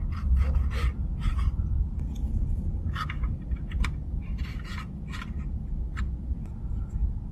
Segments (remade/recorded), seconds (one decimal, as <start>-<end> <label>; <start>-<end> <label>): 0.0-7.3 recorded